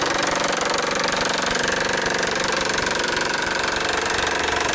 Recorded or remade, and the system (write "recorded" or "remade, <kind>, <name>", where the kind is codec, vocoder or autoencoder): remade, vocoder, BigVGAN v2